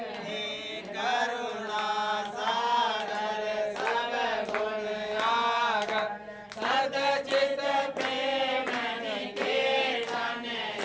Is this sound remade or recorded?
recorded